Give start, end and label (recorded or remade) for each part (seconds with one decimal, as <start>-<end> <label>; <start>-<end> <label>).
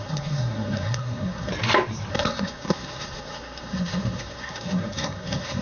0.0-1.5 remade; 1.5-2.1 recorded; 2.1-5.6 remade